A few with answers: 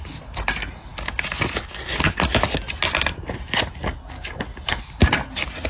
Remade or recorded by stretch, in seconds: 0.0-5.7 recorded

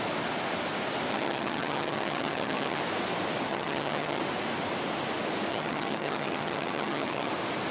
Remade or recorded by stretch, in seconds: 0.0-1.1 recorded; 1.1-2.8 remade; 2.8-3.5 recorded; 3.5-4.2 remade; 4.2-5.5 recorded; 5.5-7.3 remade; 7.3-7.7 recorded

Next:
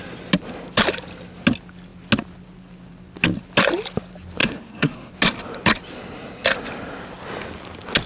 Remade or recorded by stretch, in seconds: 0.0-4.4 recorded; 4.4-5.1 remade; 5.1-8.1 recorded